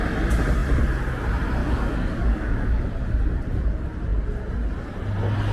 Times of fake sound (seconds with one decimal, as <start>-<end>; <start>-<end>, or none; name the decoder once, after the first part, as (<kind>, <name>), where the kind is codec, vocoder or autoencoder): 1.6-2.8 (codec, DAC)